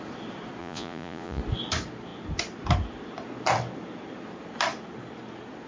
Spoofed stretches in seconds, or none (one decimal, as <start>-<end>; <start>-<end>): 0.6-1.4